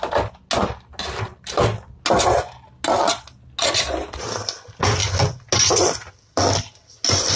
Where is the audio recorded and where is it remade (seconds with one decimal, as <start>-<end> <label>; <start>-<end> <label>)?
0.0-7.4 recorded